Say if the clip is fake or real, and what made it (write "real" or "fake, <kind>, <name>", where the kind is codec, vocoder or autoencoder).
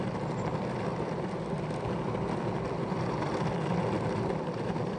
real